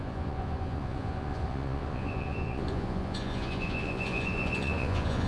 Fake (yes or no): yes